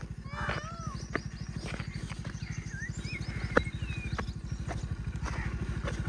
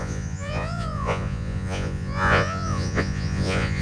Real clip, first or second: first